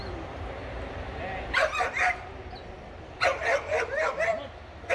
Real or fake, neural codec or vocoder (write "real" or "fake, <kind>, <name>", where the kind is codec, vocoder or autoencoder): fake, vocoder, BigVGAN v2